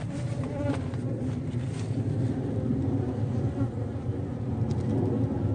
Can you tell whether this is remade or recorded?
recorded